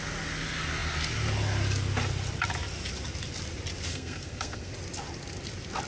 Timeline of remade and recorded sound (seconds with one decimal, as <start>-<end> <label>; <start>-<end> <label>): 0.0-3.9 recorded; 3.9-4.7 remade; 4.7-5.9 recorded